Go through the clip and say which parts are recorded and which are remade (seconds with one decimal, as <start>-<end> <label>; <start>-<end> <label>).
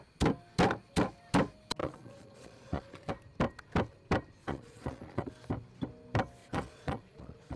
0.0-1.8 recorded; 1.8-3.1 remade; 3.1-4.4 recorded; 4.4-5.3 remade; 5.3-6.4 recorded; 6.4-7.6 remade